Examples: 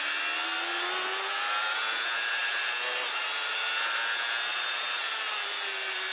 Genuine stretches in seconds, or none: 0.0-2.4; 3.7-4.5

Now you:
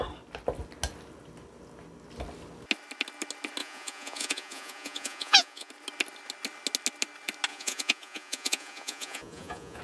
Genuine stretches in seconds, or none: 0.0-3.6; 5.7-7.5

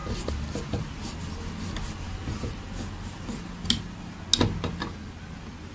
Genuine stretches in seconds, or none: 0.0-5.7

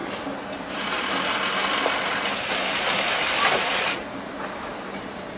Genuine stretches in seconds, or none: 0.0-0.6; 1.6-2.6

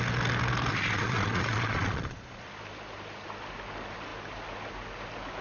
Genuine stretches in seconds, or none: 0.0-0.7; 2.5-5.4

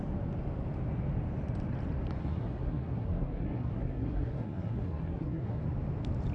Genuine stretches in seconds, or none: 0.0-2.2; 5.6-6.3